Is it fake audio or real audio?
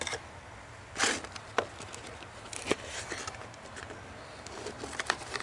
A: real